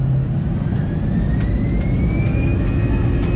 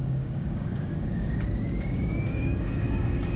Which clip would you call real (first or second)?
first